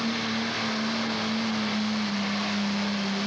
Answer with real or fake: real